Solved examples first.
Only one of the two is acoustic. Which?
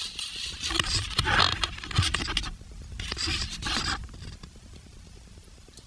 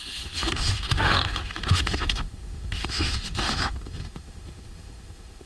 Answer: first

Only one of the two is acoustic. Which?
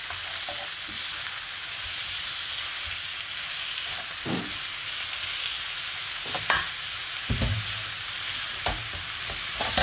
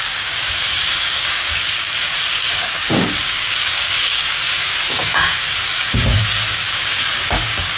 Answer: first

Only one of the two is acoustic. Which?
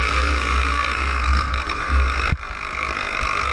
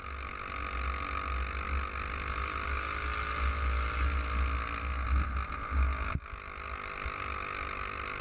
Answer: second